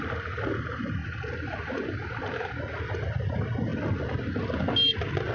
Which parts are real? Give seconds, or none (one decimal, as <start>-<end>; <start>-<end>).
0.0-5.3